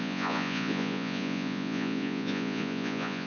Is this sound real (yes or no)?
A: no